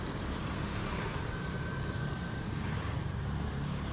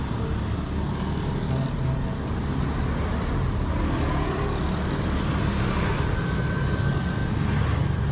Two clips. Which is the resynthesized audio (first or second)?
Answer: first